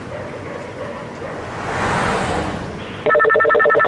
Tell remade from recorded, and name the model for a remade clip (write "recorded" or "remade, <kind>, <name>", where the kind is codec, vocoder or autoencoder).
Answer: remade, vocoder, Vocos